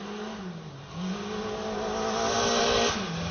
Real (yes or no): yes